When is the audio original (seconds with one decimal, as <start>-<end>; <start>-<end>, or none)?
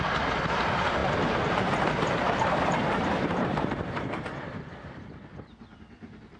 0.0-1.0; 4.2-6.4